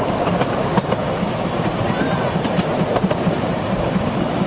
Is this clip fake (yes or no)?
no